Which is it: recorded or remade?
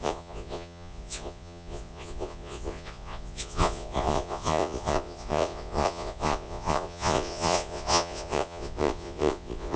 remade